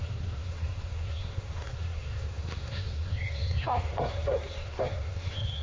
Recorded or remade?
remade